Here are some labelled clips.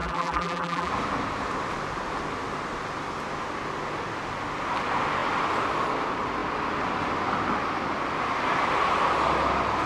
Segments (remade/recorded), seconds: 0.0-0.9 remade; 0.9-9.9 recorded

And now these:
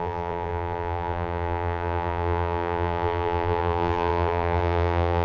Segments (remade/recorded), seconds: 0.0-5.2 remade

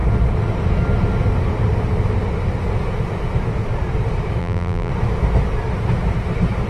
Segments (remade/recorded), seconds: 0.0-4.4 recorded; 4.4-4.9 remade; 4.9-6.7 recorded

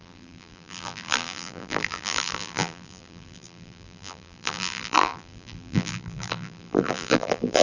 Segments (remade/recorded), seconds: 0.0-7.6 remade

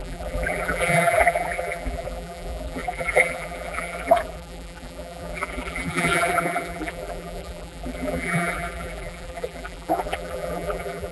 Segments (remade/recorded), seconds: 0.0-11.1 remade